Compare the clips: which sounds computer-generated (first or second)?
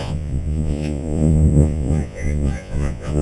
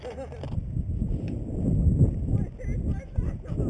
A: first